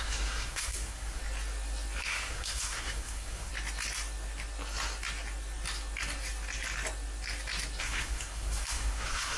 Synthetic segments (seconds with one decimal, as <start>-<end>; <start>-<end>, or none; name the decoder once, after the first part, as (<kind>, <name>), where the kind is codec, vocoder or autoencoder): 0.0-1.2 (codec, SNAC); 2.0-3.5; 7.8-9.4